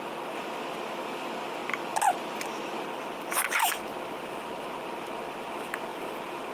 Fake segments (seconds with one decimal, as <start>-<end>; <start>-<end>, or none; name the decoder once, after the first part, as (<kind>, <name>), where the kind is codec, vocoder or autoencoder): 5.9-6.5 (vocoder, BigVGAN v2)